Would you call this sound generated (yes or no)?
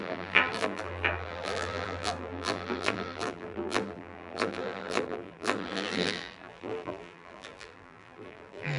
yes